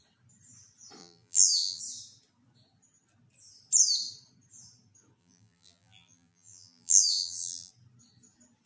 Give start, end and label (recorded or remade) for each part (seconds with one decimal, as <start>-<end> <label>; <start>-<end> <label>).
0.0-1.0 recorded; 1.0-1.8 remade; 1.8-5.2 recorded; 5.2-7.7 remade; 7.7-8.7 recorded